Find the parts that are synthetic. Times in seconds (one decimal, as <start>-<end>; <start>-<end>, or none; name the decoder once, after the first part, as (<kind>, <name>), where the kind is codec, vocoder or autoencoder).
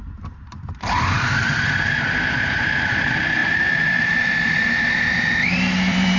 0.0-6.2 (vocoder, BigVGAN v2)